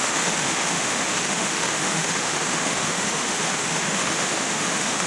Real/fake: fake